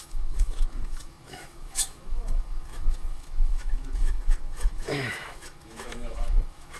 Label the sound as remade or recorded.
remade